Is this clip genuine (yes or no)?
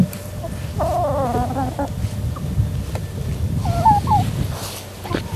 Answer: yes